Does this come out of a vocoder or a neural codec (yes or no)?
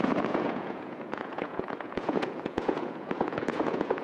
yes